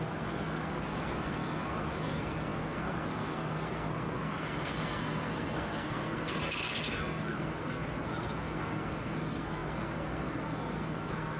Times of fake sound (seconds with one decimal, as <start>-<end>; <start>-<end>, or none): 0.0-11.4